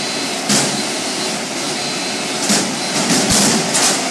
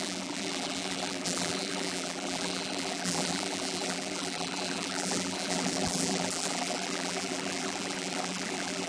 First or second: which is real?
first